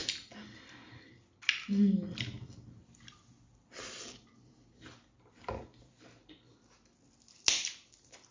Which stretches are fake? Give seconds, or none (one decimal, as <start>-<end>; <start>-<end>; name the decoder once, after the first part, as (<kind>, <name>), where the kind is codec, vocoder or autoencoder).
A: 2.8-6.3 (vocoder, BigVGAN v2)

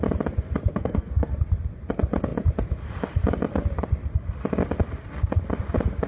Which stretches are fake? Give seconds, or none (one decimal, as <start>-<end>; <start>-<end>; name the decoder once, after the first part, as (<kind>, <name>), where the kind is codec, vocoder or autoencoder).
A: 0.7-1.3 (codec, SNAC)

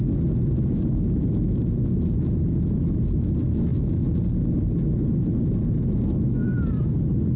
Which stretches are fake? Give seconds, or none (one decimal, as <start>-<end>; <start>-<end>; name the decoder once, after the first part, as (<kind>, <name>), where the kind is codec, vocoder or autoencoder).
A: none